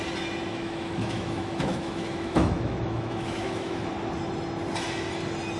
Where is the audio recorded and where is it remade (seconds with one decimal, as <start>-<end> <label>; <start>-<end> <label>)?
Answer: 0.0-0.5 recorded; 0.5-3.9 remade; 3.9-5.6 recorded